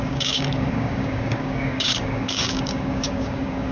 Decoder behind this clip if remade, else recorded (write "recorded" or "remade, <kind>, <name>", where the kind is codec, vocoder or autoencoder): remade, codec, DAC